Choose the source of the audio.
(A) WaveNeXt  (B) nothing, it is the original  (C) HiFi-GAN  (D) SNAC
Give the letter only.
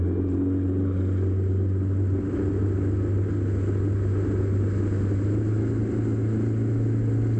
B